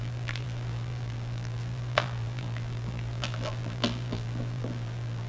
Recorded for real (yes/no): no